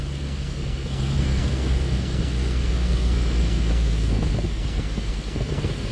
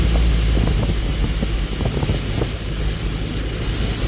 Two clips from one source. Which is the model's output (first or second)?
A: first